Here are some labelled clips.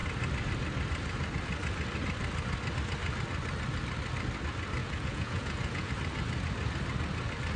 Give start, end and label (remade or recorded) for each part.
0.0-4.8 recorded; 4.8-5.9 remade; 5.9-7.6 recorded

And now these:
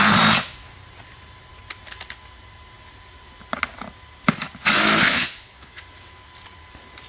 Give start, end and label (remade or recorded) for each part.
0.0-5.1 recorded; 5.1-5.8 remade; 5.8-7.1 recorded

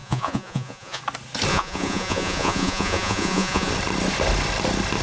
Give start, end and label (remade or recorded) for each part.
0.0-1.0 remade; 1.0-1.5 recorded; 1.5-3.7 remade; 3.7-5.0 recorded

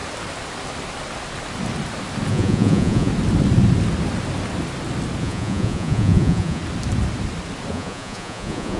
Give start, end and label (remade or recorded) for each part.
0.0-2.3 recorded; 2.3-3.1 remade; 3.1-5.2 recorded; 5.2-6.6 remade; 6.6-7.7 recorded; 7.7-8.8 remade

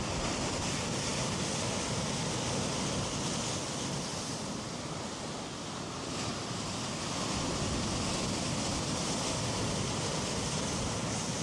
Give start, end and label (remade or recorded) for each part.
0.0-11.4 recorded

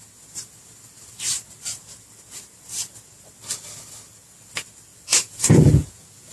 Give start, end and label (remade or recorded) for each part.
0.0-5.1 recorded; 5.1-6.3 remade

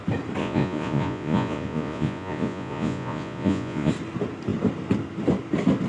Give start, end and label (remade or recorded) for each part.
0.0-0.4 recorded; 0.4-3.9 remade; 3.9-5.9 recorded